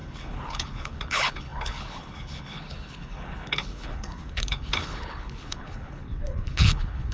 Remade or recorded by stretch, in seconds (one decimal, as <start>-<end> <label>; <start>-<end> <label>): 0.0-7.1 remade